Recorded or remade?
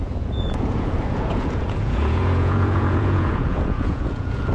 remade